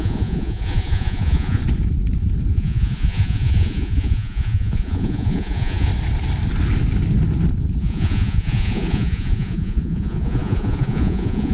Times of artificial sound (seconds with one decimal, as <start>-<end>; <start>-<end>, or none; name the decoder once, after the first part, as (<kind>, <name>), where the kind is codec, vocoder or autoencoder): 0.0-1.6 (vocoder, Vocos); 2.5-5.9; 7.8-11.5